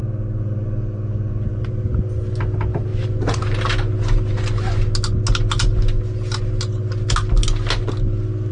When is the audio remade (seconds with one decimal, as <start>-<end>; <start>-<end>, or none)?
none